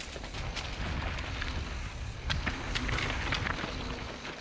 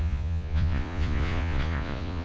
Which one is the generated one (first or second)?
second